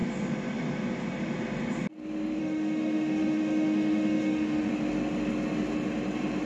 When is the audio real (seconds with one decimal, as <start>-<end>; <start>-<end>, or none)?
0.0-2.4; 4.7-6.5